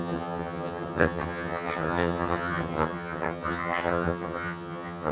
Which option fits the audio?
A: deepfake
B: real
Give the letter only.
A